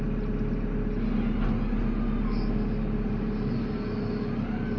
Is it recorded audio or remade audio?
recorded